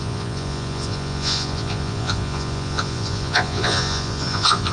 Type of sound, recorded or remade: remade